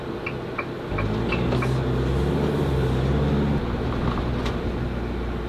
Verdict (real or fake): real